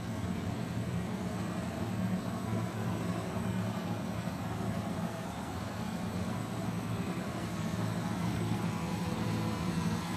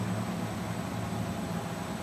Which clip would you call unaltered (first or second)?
second